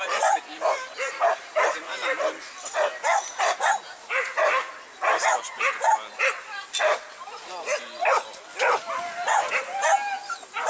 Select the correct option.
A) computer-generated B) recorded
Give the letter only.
B